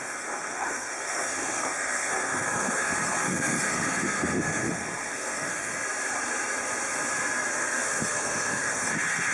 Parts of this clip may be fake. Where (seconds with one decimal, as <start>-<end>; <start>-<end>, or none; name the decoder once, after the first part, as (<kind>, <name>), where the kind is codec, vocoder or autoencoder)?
0.0-5.7 (codec, SNAC); 7.5-9.3